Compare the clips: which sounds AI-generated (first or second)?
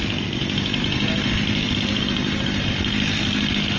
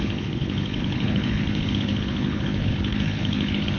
second